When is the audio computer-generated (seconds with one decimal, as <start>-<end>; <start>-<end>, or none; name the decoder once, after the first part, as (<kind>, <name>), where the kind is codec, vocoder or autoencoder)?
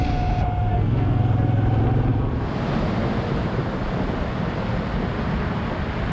0.7-1.2 (codec, SNAC)